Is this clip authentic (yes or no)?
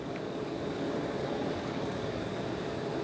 no